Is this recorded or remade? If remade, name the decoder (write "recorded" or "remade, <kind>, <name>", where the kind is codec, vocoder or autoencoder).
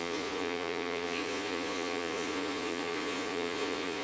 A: remade, vocoder, Vocos